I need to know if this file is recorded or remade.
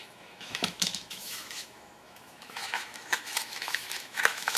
remade